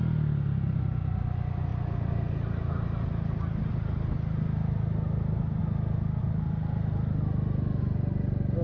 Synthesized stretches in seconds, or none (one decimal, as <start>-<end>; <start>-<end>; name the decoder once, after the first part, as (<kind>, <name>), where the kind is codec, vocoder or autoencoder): none